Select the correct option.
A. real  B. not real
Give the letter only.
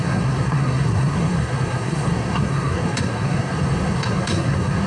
B